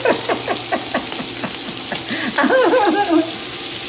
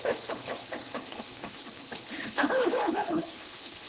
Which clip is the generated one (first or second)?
second